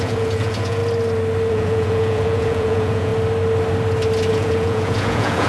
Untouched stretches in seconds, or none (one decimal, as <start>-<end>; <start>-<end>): 0.8-1.5; 3.1-4.3